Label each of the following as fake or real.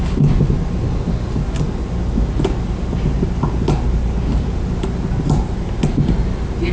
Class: real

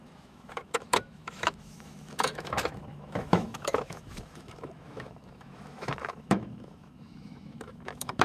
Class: fake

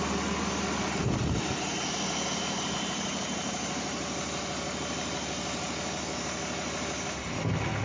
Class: real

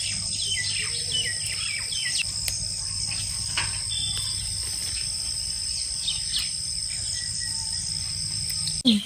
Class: real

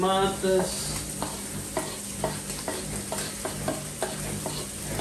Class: real